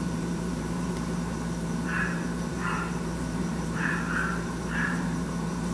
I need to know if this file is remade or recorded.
remade